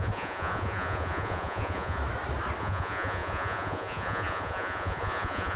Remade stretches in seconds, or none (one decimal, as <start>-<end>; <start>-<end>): 0.0-2.0; 2.6-5.6